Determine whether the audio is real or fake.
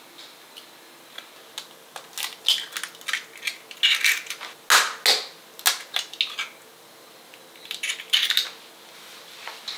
real